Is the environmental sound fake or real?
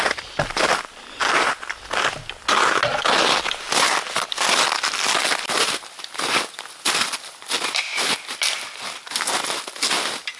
real